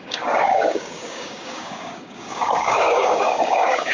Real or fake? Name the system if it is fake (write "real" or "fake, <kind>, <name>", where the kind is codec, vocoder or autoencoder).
fake, codec, DAC